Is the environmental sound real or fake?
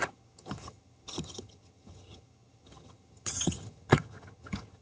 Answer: fake